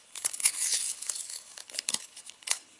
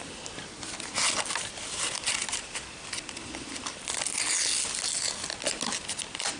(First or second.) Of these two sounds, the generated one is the first